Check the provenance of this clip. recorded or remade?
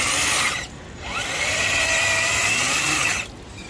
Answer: recorded